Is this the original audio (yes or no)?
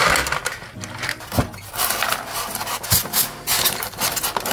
yes